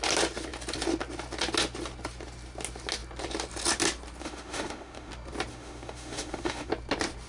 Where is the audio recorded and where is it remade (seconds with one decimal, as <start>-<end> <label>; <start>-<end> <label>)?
0.0-4.2 recorded; 4.2-5.1 remade; 5.1-5.5 recorded; 5.5-6.7 remade; 6.7-7.3 recorded